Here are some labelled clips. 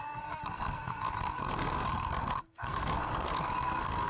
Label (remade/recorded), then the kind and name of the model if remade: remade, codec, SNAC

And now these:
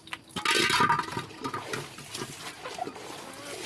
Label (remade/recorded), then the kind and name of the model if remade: recorded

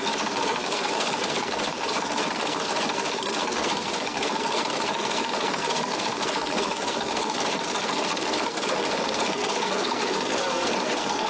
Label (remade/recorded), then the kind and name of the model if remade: remade, codec, SNAC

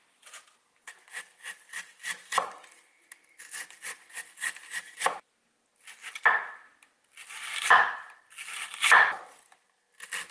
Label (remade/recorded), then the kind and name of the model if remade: recorded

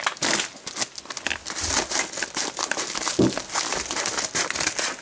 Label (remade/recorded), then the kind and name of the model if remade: recorded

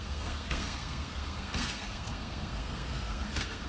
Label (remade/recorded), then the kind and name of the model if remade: remade, codec, SNAC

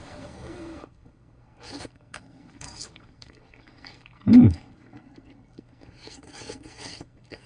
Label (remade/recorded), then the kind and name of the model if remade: remade, codec, SNAC